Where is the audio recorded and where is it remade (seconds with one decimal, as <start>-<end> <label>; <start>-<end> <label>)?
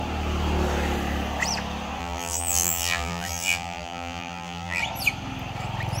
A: 0.0-2.0 recorded; 2.0-4.8 remade; 4.8-6.0 recorded